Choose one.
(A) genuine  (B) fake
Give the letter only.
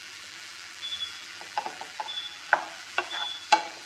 B